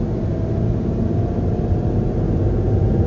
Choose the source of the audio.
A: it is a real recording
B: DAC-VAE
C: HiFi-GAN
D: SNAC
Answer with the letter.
A